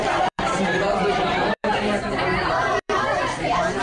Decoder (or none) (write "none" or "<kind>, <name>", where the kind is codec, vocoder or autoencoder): vocoder, BigVGAN v2